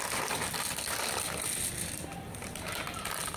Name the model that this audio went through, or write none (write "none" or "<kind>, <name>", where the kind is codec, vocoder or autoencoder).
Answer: none